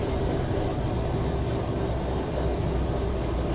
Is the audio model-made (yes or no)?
no